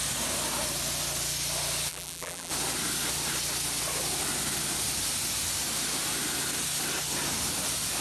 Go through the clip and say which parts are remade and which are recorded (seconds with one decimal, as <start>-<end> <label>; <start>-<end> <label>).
0.0-1.9 recorded; 1.9-2.5 remade; 2.5-8.0 recorded